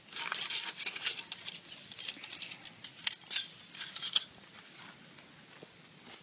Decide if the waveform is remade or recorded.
recorded